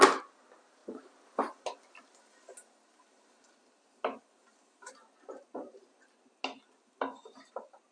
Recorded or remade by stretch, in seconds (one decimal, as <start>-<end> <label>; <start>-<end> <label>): 0.0-7.9 recorded